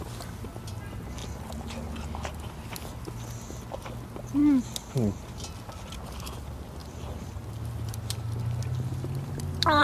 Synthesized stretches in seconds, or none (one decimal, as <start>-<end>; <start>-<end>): none